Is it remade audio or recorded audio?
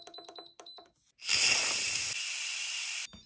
recorded